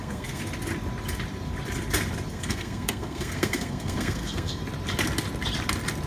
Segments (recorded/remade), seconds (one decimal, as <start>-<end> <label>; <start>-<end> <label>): 0.0-0.4 remade; 0.4-2.3 recorded; 2.3-4.6 remade; 4.6-6.1 recorded